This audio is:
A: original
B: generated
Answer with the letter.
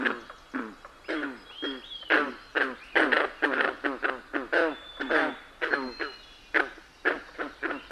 A